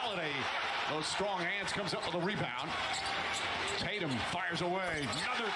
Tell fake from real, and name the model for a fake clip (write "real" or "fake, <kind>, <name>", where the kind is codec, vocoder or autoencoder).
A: real